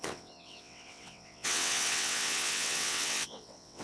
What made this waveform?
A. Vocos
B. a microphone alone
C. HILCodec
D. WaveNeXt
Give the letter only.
D